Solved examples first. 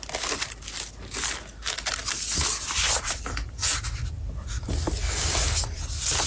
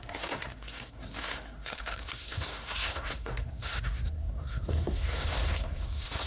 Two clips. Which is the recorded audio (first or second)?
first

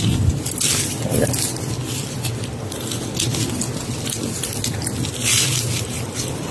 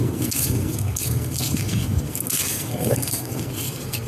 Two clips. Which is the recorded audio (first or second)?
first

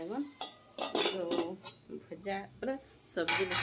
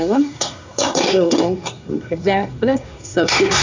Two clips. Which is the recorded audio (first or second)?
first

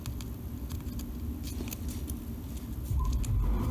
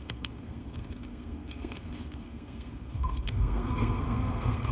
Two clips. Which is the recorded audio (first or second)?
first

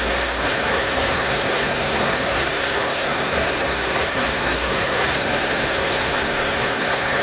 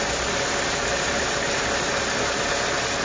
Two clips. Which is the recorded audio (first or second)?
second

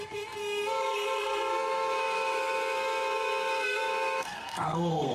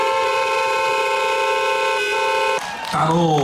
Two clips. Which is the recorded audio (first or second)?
second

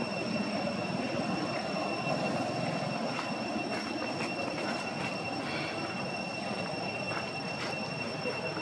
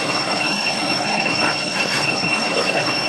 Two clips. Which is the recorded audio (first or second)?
first